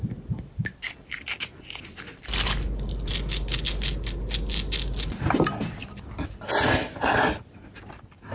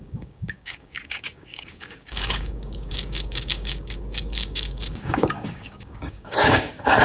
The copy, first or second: second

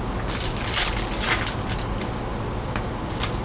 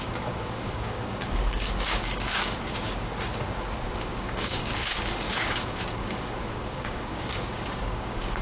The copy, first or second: second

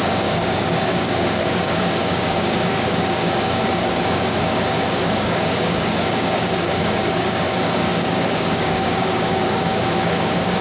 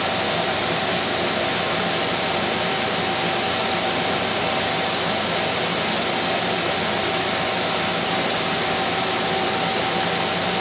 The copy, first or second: first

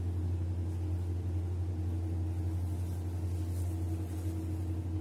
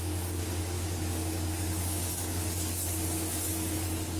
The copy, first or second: second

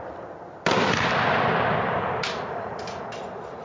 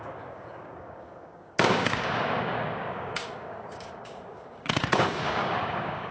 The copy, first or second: second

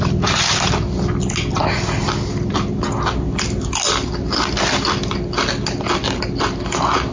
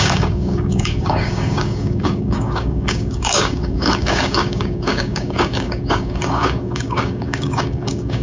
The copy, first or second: second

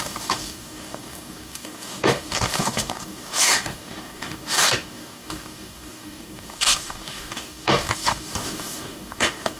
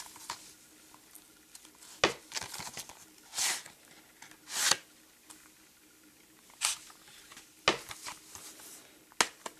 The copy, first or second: first